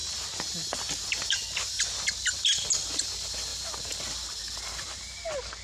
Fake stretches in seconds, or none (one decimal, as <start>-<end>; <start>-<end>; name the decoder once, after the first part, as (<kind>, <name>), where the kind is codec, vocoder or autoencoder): 0.0-3.1 (vocoder, BigVGAN v2); 3.5-4.4